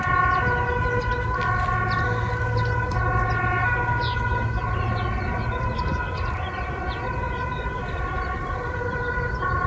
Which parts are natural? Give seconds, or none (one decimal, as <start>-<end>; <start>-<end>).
0.0-7.8